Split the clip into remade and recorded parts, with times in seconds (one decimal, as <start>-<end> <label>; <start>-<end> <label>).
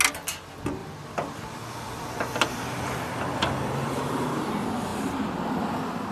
0.0-0.8 recorded; 0.8-4.5 remade; 4.5-6.1 recorded